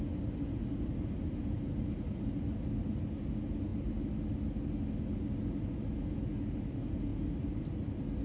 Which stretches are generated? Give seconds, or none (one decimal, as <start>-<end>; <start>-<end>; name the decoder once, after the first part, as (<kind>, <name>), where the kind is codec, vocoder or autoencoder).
none